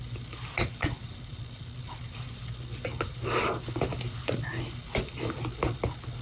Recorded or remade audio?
recorded